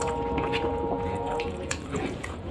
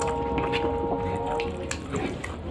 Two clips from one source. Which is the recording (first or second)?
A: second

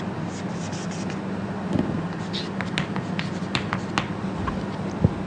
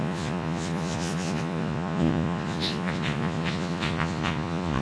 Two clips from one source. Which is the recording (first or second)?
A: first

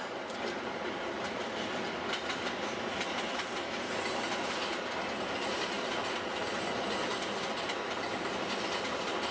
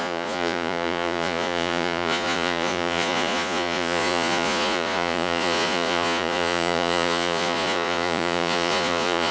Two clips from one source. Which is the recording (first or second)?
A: first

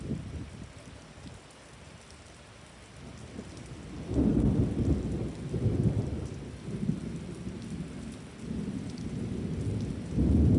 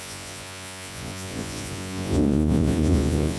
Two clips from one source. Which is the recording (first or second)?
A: first